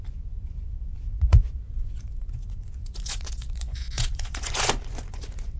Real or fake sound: fake